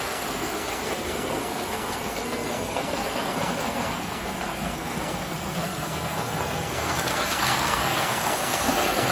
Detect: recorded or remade remade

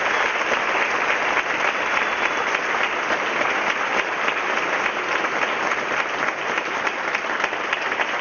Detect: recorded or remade recorded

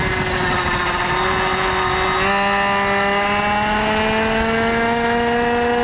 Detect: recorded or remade recorded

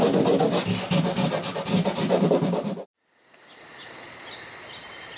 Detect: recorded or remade recorded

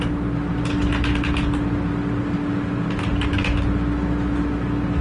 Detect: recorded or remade recorded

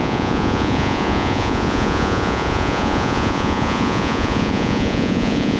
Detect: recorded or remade remade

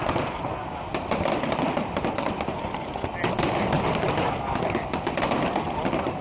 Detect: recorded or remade recorded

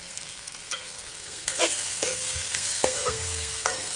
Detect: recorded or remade remade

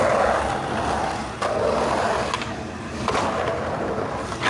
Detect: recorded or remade recorded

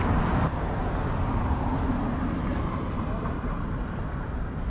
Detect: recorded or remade remade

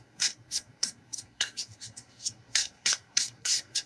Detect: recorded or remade remade